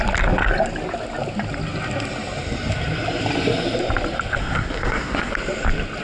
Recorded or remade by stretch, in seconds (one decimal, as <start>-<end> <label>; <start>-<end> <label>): 0.0-4.4 recorded; 4.4-5.3 remade; 5.3-6.0 recorded